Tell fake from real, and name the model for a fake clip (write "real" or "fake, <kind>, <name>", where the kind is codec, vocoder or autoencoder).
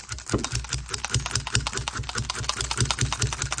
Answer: real